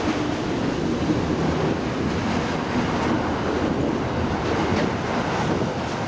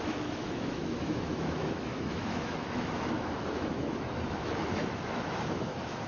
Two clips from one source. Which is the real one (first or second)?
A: first